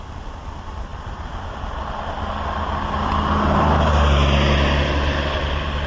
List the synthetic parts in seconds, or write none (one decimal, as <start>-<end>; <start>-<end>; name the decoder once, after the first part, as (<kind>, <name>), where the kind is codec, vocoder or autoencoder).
none